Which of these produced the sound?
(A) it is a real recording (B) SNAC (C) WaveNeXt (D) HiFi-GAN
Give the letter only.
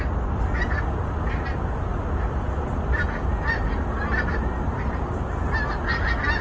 A